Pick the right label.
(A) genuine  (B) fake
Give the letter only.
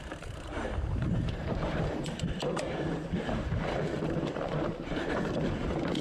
B